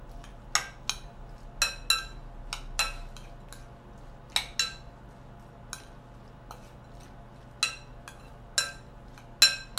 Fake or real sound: real